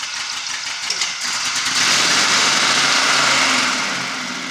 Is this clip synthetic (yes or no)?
no